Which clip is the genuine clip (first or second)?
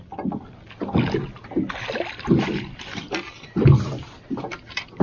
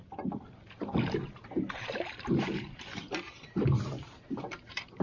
first